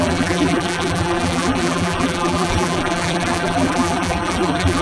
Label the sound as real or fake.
fake